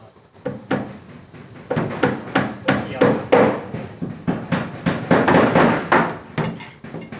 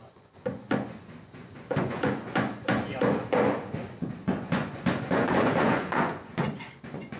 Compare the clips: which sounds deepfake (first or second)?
second